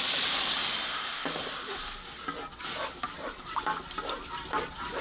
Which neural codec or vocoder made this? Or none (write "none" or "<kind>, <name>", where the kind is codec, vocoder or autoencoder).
none